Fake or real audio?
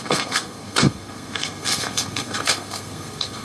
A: fake